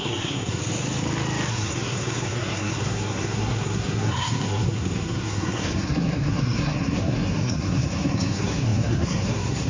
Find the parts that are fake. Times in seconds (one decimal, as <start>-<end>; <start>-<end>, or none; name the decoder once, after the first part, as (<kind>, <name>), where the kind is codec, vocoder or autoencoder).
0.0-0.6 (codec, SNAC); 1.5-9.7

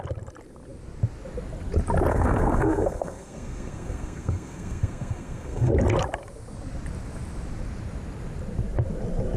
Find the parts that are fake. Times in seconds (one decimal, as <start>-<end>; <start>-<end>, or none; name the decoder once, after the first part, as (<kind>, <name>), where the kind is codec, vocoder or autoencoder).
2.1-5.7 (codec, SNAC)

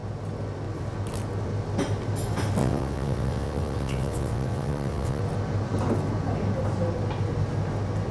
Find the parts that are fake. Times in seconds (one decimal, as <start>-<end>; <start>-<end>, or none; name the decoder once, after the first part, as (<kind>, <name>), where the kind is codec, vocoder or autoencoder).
2.6-5.2 (vocoder, WaveNeXt)

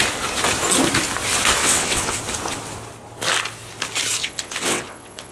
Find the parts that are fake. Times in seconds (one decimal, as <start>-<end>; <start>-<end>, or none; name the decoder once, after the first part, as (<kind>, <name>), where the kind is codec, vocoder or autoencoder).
1.6-2.2 (vocoder, WaveNeXt); 4.2-5.3

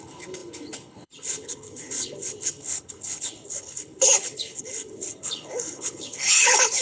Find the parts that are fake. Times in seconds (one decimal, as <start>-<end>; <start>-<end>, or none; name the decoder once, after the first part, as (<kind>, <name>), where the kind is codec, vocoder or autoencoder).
0.0-6.8 (codec, HILCodec)